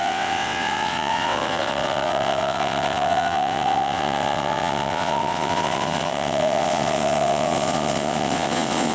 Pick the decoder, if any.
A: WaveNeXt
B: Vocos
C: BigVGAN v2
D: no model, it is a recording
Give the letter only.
A